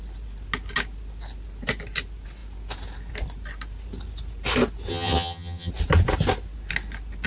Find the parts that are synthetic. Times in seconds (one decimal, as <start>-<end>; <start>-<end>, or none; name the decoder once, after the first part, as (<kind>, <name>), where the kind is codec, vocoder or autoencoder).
4.9-5.7 (vocoder, HiFi-GAN)